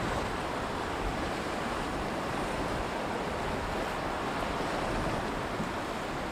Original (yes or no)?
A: yes